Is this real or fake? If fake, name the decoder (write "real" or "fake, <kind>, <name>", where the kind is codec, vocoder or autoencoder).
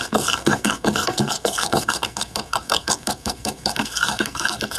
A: fake, codec, SNAC